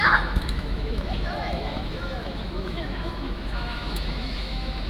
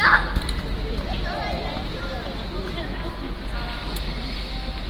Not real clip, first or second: first